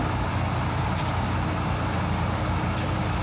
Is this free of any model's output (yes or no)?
yes